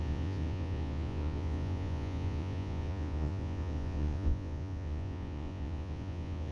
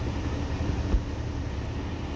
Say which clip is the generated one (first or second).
first